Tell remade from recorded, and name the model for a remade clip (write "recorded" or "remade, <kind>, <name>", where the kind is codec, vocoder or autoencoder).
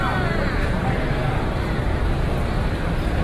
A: recorded